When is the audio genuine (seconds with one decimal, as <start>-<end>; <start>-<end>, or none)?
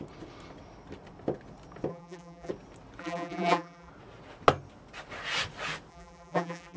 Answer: 0.0-1.9; 2.5-3.0; 3.9-5.9